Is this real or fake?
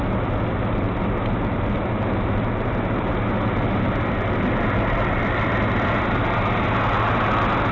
real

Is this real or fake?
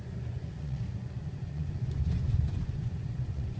fake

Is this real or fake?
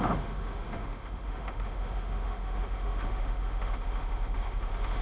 fake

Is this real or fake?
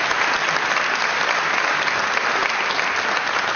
real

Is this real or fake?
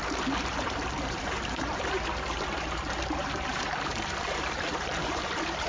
fake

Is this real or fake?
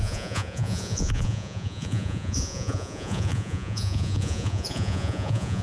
fake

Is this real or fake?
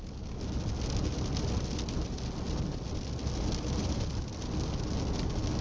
real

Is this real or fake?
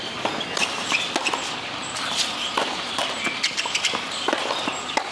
real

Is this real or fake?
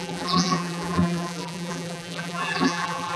fake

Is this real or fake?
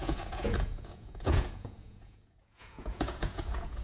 fake